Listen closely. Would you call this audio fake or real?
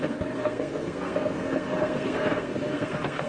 fake